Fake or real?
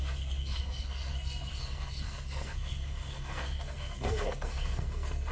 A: fake